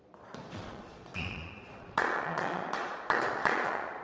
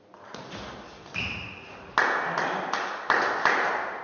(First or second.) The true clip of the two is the second